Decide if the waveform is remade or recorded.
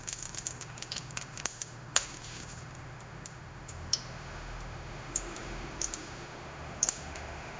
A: remade